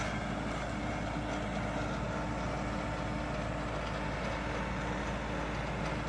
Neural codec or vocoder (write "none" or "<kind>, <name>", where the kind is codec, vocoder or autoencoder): none